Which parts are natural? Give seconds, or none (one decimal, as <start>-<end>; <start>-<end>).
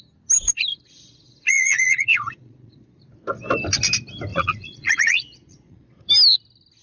0.0-0.7; 3.0-4.3; 6.0-6.8